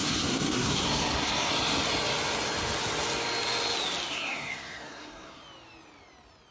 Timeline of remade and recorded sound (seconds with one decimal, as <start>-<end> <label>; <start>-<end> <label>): 0.0-1.5 remade; 1.5-4.1 recorded; 4.1-5.4 remade; 5.4-6.5 recorded